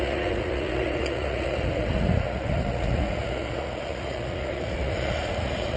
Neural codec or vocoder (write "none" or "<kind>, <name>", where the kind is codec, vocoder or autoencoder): vocoder, Vocos